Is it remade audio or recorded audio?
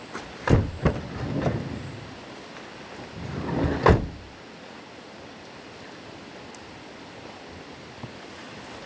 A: recorded